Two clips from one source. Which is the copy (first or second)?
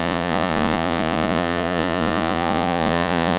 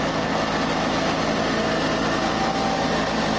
first